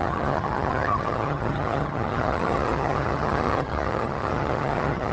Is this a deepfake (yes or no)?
yes